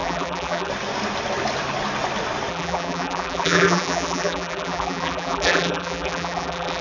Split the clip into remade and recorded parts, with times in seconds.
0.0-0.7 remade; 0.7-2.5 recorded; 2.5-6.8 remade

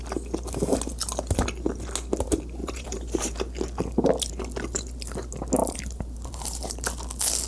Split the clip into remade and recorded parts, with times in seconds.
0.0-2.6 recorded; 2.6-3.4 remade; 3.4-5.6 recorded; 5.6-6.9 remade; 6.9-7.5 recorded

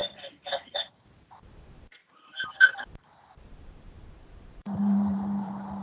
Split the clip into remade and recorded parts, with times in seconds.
0.0-0.6 recorded; 0.6-5.8 remade

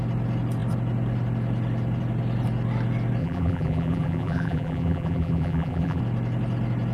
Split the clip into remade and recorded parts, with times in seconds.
0.0-3.2 recorded; 3.2-6.0 remade; 6.0-6.9 recorded

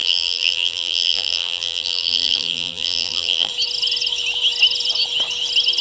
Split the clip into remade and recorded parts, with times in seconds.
0.0-3.5 remade; 3.5-5.8 recorded

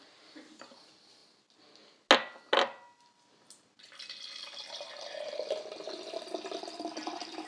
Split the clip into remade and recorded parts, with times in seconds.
0.0-7.5 recorded